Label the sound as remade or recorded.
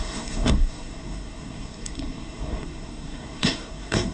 remade